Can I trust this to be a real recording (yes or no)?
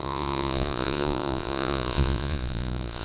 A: no